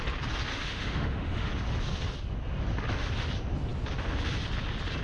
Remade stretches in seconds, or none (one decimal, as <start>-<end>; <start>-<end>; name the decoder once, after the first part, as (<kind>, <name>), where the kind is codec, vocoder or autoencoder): 0.5-1.5 (autoencoder, DAC-VAE)

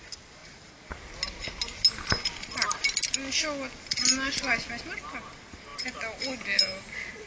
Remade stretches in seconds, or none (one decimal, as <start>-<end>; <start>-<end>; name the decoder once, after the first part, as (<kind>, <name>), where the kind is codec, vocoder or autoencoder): none

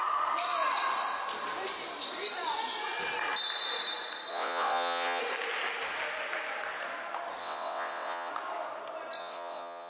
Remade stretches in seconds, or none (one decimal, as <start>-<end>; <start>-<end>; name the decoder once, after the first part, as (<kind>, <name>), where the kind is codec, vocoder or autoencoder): 4.3-5.2 (vocoder, WaveNeXt); 7.4-8.3; 9.2-9.9

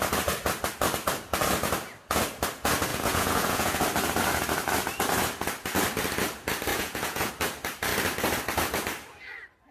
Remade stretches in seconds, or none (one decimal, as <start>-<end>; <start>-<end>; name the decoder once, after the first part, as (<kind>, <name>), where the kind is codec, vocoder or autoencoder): 2.9-3.8 (vocoder, Vocos); 6.7-7.3

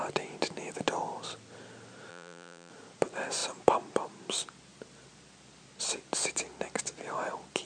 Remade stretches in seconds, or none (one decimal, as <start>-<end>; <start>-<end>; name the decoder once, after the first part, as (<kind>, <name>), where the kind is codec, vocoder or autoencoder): 2.1-2.7 (vocoder, BigVGAN v2)

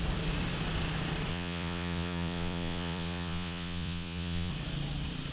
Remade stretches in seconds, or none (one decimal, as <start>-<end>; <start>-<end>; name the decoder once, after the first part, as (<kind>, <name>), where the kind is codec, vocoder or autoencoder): 1.3-4.5 (vocoder, Vocos)

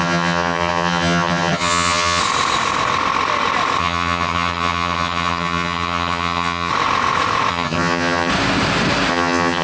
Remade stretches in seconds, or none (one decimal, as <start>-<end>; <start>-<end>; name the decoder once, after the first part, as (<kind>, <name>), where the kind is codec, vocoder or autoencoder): 0.0-2.2 (vocoder, HiFi-GAN); 3.8-6.7; 7.5-8.3; 9.1-9.6